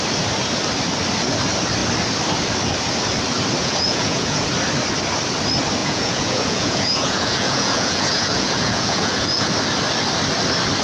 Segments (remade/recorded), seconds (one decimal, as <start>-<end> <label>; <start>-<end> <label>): 0.0-3.6 recorded; 3.6-4.5 remade; 4.5-5.8 recorded; 5.8-9.5 remade; 9.5-10.8 recorded